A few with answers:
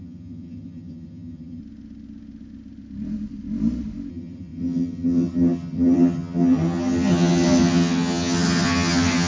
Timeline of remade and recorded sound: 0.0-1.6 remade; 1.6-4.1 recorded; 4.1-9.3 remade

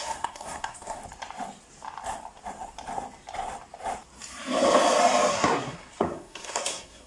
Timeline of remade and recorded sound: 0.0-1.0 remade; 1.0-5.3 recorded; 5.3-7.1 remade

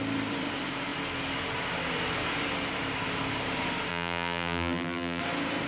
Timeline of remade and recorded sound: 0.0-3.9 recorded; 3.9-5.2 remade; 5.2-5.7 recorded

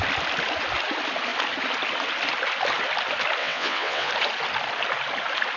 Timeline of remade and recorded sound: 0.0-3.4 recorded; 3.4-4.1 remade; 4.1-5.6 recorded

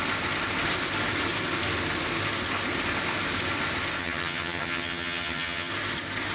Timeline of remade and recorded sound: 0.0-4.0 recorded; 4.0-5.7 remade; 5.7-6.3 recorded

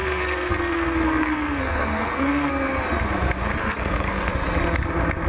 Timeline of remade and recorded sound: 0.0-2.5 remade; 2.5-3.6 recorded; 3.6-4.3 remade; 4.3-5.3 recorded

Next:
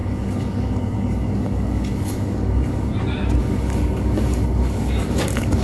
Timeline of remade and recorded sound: 0.0-2.9 remade; 2.9-3.4 recorded; 3.4-5.6 remade

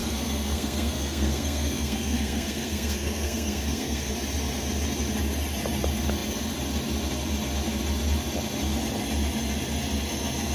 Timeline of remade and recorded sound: 0.0-4.1 remade; 4.1-10.5 recorded